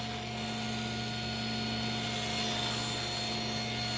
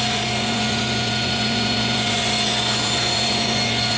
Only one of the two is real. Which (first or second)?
first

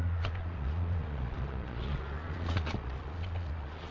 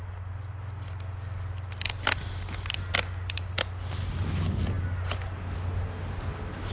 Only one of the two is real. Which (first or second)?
second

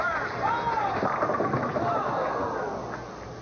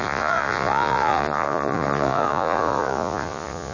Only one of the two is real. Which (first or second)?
first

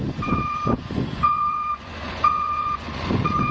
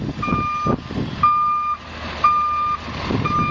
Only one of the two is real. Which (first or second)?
second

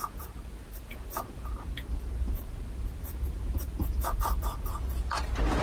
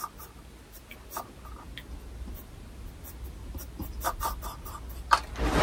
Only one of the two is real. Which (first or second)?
second